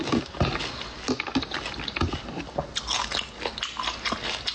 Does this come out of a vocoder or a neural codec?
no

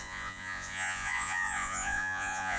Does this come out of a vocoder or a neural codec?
yes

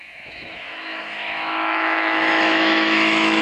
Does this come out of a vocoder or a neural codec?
yes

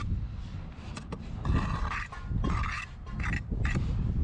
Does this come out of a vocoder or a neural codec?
no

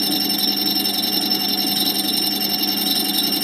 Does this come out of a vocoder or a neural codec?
no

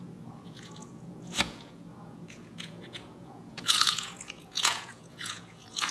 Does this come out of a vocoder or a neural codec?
yes